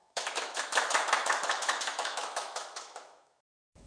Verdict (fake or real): fake